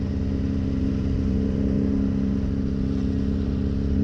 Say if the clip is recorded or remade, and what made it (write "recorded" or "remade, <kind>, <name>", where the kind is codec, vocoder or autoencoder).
recorded